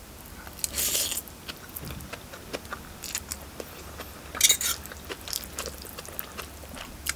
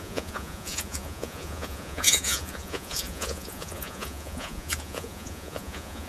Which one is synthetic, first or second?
second